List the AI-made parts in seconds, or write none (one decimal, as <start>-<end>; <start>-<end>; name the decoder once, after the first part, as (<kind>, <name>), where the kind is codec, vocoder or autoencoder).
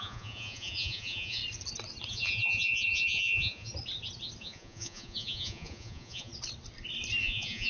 0.0-1.4 (vocoder, Vocos); 2.1-3.7; 4.4-6.3; 7.2-7.7